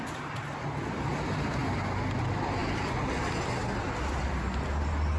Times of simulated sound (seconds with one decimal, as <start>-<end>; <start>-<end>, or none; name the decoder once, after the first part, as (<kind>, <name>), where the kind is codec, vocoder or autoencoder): 0.5-1.1 (vocoder, BigVGAN v2); 2.6-3.2